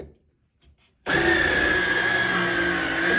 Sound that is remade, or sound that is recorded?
recorded